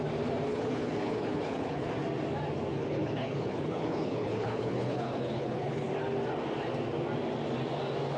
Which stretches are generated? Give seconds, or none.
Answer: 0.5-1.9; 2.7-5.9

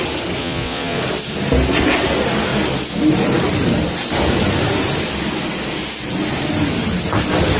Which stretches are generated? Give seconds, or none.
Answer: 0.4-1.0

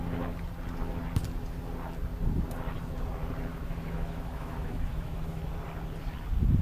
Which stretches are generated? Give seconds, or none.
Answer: 3.5-5.4

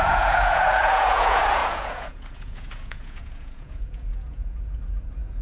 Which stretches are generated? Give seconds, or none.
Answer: 0.0-5.4

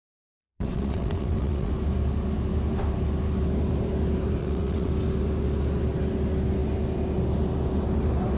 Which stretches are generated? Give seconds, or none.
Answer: 0.4-1.7; 4.4-4.9